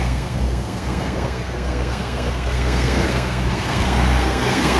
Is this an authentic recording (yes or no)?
no